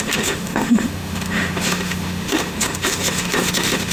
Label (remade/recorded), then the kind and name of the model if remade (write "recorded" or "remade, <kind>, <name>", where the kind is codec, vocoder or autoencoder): remade, autoencoder, DAC-VAE